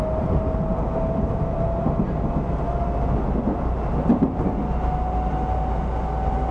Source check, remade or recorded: recorded